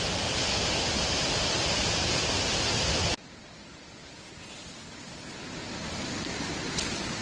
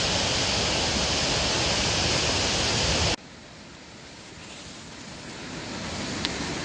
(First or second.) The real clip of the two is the second